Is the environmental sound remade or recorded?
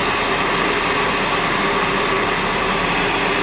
recorded